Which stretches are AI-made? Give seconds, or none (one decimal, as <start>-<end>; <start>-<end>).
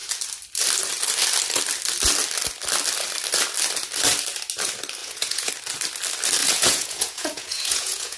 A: 5.0-5.5; 6.4-8.2